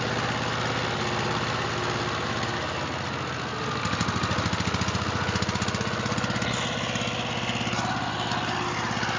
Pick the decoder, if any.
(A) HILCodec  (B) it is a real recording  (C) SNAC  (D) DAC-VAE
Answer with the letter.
B